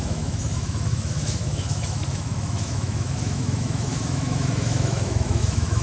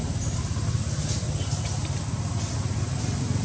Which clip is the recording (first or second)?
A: second